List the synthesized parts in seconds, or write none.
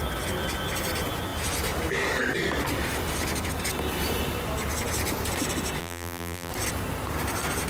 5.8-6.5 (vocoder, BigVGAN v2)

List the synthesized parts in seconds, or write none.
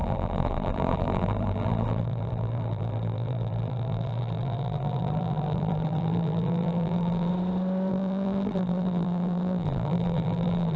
0.0-7.3 (vocoder, BigVGAN v2); 7.9-10.8